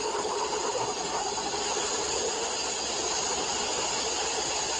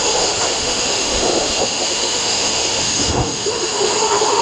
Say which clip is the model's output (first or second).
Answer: second